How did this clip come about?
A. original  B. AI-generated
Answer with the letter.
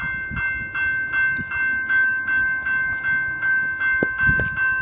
A